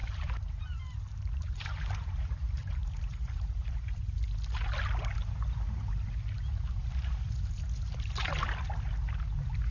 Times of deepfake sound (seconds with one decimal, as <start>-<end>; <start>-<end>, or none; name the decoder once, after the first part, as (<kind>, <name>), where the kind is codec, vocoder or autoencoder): 0.0-4.2 (vocoder, BigVGAN v2)